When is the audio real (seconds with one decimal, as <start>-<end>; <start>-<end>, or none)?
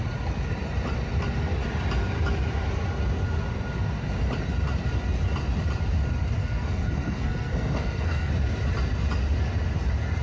0.0-6.4; 8.3-10.2